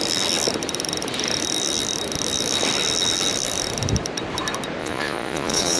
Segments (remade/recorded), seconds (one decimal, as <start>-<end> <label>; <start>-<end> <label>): 0.0-4.8 recorded; 4.8-5.8 remade